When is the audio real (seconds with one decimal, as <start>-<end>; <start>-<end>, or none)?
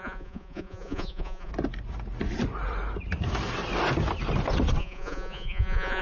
1.5-4.8